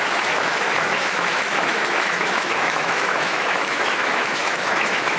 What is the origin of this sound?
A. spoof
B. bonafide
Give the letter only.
A